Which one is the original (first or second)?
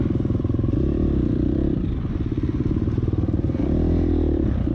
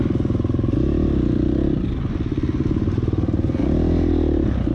second